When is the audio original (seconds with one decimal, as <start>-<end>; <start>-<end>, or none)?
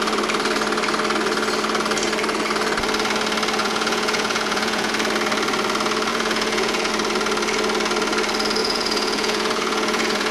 0.0-3.6; 4.9-6.1; 6.9-8.6